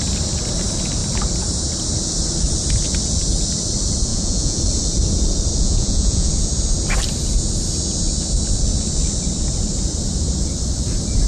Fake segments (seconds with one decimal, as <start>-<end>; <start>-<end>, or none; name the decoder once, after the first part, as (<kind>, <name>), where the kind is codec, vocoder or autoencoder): 4.1-4.6 (vocoder, Vocos); 5.6-6.3